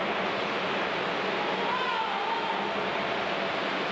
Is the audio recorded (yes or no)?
yes